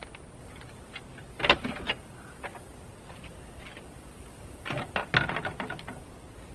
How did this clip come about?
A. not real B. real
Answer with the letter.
B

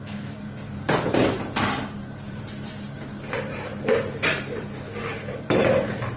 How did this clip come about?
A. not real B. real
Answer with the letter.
A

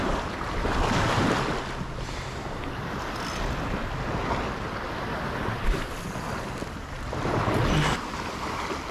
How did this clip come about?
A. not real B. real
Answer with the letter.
B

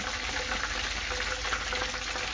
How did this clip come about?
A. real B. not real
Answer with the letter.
A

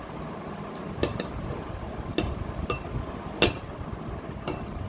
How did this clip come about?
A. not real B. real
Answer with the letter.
B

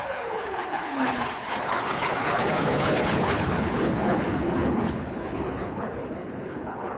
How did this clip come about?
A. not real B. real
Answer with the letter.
A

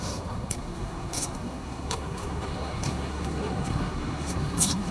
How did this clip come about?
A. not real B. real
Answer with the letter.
A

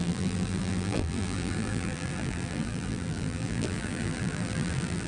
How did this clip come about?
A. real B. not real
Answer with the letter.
B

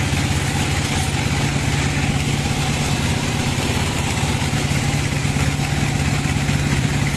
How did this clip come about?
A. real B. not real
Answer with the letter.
A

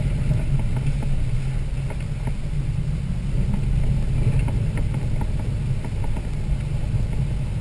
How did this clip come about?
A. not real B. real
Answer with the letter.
B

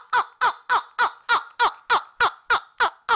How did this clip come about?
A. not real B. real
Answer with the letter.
B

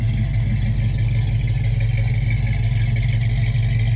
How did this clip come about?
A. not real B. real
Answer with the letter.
B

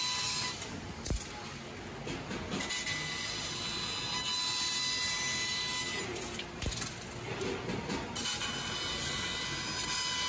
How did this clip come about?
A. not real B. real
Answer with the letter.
B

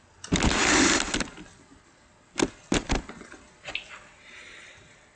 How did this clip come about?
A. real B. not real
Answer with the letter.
B